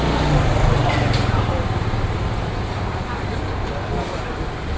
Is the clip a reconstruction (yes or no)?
no